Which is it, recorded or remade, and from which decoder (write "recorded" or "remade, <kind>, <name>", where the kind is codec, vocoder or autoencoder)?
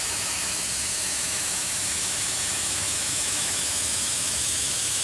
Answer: remade, autoencoder, DAC-VAE